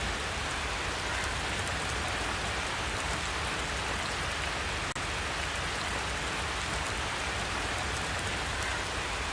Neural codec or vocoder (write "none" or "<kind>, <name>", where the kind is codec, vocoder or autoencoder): none